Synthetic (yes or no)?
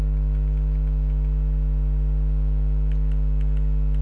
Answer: no